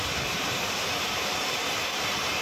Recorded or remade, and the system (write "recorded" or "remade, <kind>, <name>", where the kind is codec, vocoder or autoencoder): remade, vocoder, BigVGAN v2